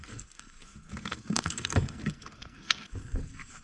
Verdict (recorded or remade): remade